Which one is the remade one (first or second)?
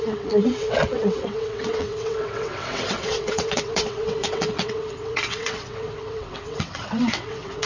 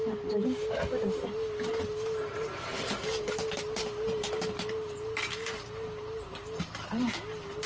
first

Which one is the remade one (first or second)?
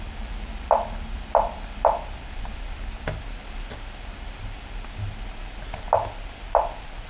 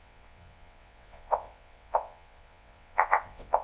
second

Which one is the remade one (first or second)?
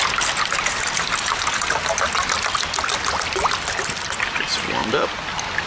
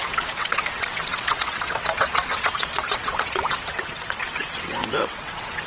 second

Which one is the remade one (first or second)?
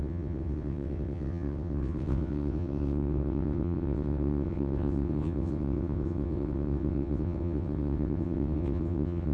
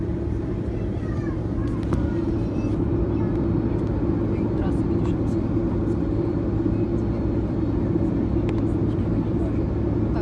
first